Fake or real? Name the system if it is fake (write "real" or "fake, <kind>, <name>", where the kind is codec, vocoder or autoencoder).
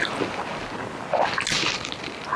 real